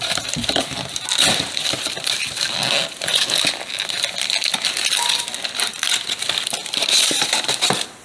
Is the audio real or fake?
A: real